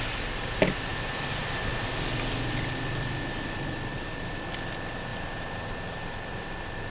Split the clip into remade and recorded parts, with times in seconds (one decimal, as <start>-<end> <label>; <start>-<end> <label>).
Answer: 0.0-0.9 recorded; 0.9-1.8 remade; 1.8-3.9 recorded; 3.9-4.4 remade; 4.4-5.1 recorded; 5.1-6.1 remade; 6.1-6.9 recorded